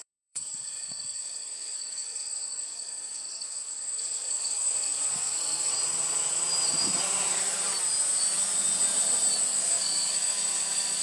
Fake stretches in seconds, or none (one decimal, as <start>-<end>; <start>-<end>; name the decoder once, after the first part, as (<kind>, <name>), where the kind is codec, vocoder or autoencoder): 0.0-5.7 (codec, SNAC); 9.5-11.0